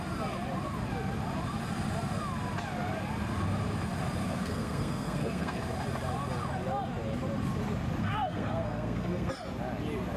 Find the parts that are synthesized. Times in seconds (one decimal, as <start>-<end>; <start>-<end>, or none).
4.2-5.6; 8.0-9.3